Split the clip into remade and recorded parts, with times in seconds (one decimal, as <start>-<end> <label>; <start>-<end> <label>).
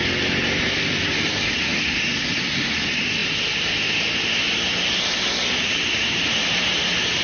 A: 0.0-7.2 recorded